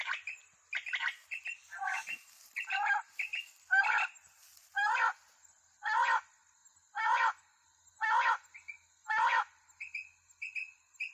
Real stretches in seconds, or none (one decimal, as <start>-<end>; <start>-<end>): 0.0-11.1